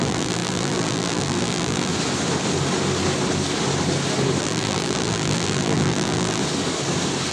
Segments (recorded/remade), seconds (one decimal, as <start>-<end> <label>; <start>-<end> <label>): 0.0-1.9 remade; 1.9-4.4 recorded; 4.4-6.4 remade; 6.4-7.3 recorded